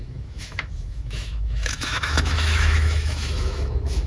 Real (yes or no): no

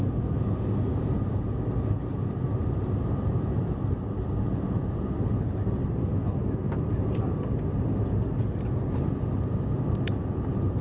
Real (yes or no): yes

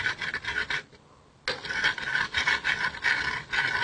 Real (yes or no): yes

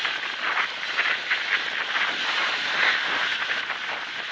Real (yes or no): yes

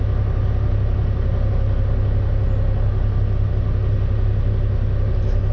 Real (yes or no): yes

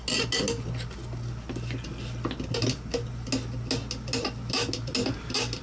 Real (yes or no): yes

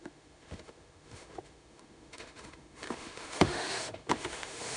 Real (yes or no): no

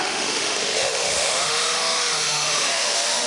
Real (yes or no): no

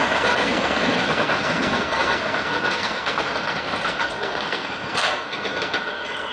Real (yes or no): no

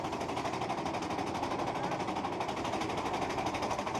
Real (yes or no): yes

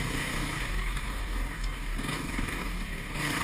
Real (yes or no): no